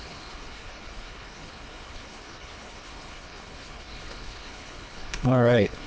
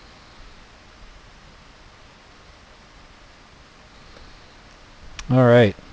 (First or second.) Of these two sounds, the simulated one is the first